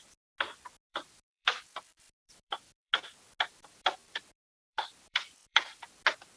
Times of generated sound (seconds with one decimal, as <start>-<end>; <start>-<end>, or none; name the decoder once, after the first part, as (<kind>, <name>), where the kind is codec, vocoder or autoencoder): 0.9-2.9 (vocoder, BigVGAN v2); 3.5-6.0